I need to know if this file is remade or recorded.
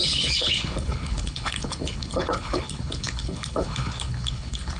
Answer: remade